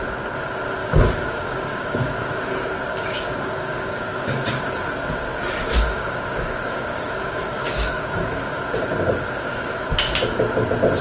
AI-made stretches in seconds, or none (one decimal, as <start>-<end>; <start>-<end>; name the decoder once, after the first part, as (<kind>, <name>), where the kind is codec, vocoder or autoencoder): 0.8-2.5 (codec, DAC); 2.9-4.6; 5.9-8.6